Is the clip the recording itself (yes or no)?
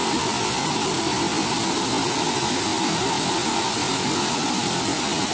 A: yes